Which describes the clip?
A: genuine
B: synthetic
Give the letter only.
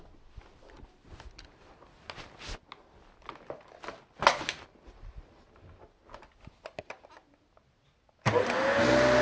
A